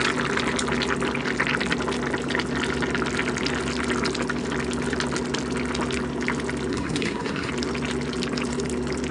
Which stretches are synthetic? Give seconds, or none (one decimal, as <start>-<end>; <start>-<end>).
6.7-7.5